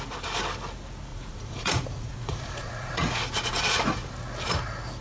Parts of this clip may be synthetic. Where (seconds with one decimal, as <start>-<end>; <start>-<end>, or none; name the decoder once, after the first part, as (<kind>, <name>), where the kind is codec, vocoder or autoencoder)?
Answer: 1.1-4.1 (vocoder, Vocos)